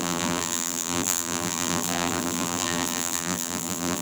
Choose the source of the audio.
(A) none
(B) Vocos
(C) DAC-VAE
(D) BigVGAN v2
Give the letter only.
D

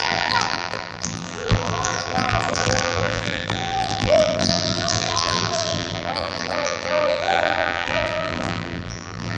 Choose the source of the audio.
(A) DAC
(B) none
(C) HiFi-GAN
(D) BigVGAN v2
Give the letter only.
D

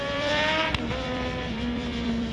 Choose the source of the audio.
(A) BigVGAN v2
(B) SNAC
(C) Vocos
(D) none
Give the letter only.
A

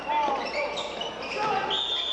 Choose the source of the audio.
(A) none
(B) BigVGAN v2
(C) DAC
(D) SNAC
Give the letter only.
A